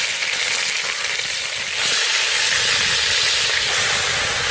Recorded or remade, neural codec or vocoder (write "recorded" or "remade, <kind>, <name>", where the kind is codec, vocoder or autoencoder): recorded